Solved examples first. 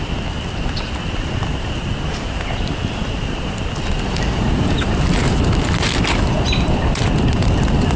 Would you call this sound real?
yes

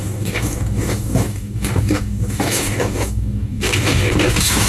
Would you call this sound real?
no